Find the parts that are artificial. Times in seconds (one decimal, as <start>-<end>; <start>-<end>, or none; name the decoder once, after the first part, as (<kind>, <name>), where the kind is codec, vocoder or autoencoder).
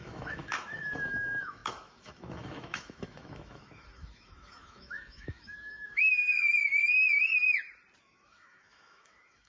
0.0-6.3 (autoencoder, DAC-VAE); 8.0-9.5